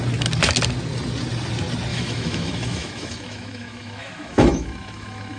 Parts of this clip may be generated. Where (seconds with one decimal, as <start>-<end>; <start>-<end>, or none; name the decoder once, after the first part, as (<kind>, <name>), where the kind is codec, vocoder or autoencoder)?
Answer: 1.9-5.4 (autoencoder, DAC-VAE)